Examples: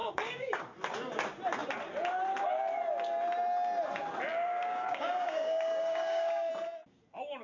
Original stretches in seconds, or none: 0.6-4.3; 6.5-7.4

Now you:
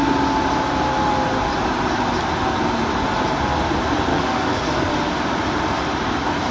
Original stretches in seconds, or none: 0.0-4.1; 4.9-6.5

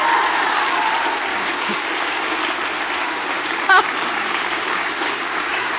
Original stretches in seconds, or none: 0.0-1.3; 2.4-3.0

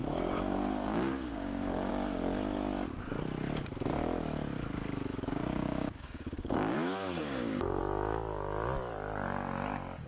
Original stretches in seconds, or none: 1.9-5.1; 7.8-10.1

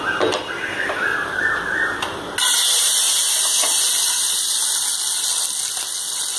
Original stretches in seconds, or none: 0.0-6.4

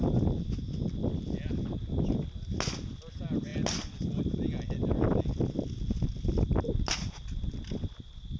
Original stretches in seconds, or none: 0.0-8.4

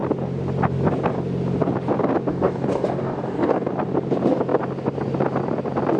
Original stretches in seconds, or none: 0.0-2.3; 3.7-6.0